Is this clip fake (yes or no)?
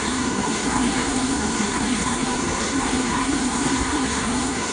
yes